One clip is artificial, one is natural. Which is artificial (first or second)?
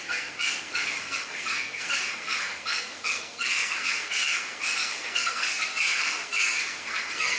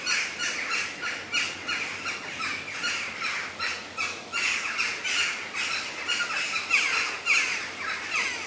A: first